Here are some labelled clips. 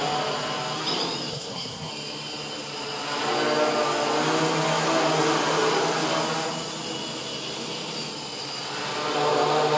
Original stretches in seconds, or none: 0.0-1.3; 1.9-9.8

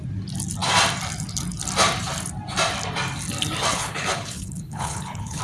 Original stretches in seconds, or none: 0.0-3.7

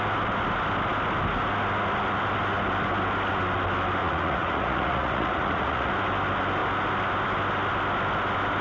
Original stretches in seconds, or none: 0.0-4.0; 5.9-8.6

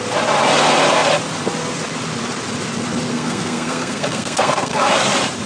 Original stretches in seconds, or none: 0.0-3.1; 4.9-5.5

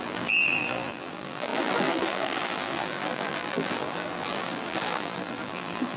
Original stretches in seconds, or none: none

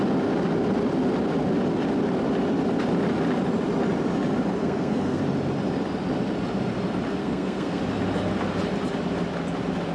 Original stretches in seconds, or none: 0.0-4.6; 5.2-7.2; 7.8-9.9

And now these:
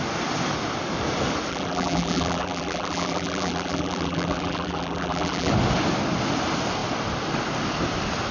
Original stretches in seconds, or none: 0.0-1.5; 5.5-8.3